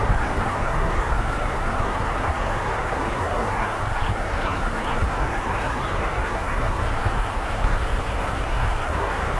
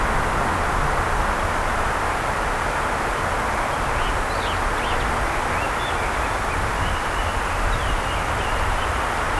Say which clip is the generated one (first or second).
first